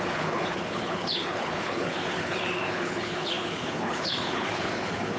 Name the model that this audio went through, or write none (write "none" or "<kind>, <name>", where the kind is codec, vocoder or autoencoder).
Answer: codec, HILCodec